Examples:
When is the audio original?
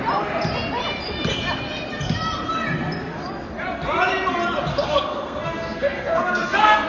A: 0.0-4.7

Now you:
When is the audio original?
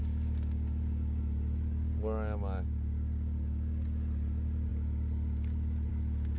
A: 0.0-6.4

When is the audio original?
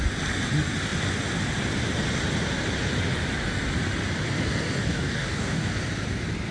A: 0.0-4.8; 5.7-6.5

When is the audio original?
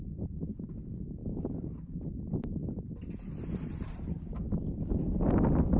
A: 0.0-5.8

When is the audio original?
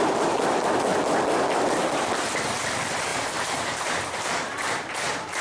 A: 0.0-3.1; 4.7-5.4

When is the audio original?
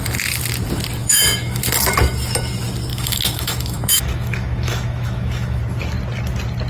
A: 0.0-1.0; 1.6-2.9; 5.6-6.7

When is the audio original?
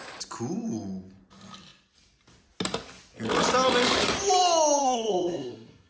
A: 0.0-4.8